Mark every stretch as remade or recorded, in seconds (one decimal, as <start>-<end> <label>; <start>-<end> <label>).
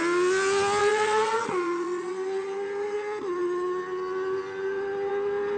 0.0-0.8 recorded; 0.8-2.1 remade; 2.1-5.6 recorded